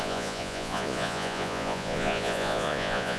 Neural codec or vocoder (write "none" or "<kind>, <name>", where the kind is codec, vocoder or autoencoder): vocoder, Vocos